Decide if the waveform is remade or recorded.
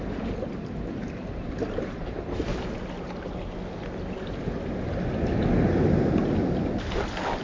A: recorded